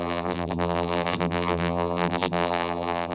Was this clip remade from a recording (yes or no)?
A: yes